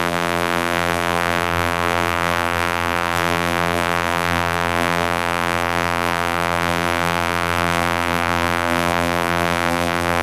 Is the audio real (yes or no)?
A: no